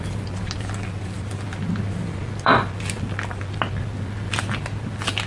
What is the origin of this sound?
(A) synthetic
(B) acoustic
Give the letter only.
A